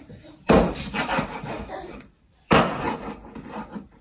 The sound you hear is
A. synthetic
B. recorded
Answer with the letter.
A